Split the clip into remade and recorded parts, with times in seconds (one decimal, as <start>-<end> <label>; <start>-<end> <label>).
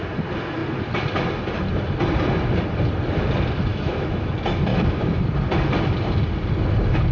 0.0-3.7 recorded; 3.7-4.3 remade; 4.3-4.7 recorded; 4.7-5.2 remade; 5.2-7.1 recorded